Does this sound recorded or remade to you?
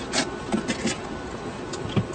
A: recorded